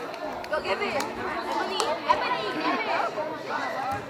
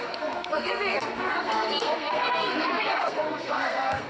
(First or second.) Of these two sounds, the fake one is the second